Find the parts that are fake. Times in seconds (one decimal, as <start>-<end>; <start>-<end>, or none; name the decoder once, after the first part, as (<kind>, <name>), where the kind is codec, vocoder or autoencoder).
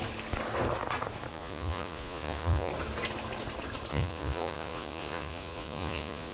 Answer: 1.3-2.7 (vocoder, Vocos); 3.9-6.3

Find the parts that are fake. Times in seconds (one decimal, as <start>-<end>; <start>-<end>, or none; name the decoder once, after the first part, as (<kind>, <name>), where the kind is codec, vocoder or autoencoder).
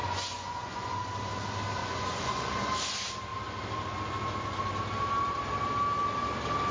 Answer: 0.0-1.0 (vocoder, Vocos); 1.8-2.7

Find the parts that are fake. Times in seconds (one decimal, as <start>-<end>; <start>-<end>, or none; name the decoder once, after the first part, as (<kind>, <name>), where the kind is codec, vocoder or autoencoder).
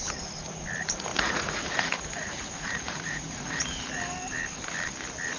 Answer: 1.1-3.6 (vocoder, Vocos)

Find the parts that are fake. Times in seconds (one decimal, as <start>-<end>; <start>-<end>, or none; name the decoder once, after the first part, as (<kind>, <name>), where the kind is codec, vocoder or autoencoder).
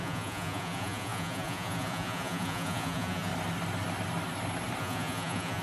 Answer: 0.0-3.3 (vocoder, Vocos); 4.8-5.6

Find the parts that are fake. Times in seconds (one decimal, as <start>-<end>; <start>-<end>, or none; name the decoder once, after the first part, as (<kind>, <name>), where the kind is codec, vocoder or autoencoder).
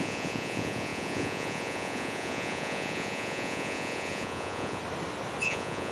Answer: 0.0-4.8 (vocoder, Vocos); 5.4-5.9